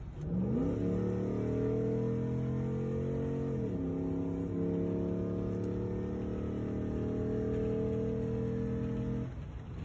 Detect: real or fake real